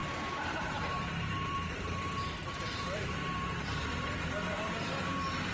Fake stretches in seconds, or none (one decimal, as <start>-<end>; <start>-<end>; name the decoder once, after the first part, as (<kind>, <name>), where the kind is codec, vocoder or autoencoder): 0.0-5.5 (vocoder, BigVGAN v2)